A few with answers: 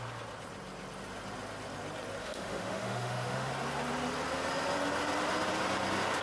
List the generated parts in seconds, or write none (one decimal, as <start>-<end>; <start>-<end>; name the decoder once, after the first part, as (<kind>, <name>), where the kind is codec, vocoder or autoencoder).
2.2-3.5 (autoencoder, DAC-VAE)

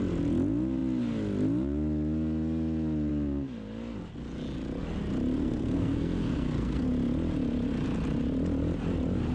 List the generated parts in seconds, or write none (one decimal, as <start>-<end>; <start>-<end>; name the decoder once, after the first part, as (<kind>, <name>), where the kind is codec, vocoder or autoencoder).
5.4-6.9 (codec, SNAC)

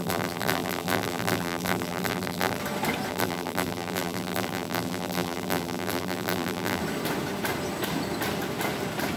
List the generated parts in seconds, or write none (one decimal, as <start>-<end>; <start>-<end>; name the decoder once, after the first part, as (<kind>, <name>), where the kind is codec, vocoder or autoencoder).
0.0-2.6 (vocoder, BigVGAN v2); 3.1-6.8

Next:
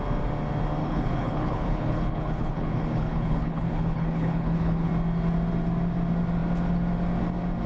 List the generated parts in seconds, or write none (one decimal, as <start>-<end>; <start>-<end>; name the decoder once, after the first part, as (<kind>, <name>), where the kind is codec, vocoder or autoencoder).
0.8-4.9 (codec, HILCodec)

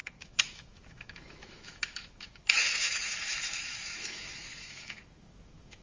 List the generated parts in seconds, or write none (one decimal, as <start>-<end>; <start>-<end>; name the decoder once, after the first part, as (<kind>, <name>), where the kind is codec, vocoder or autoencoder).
0.0-5.8 (autoencoder, DAC-VAE)

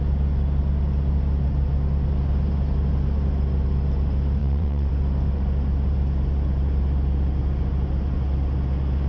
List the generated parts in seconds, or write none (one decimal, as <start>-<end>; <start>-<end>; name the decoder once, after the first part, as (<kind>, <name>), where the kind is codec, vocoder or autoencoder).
4.4-4.9 (vocoder, WaveNeXt)